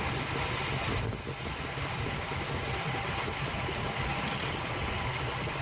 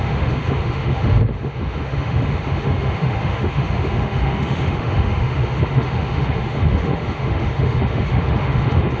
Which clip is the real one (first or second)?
first